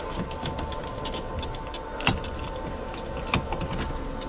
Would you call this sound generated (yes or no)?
no